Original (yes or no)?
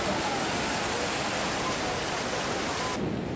yes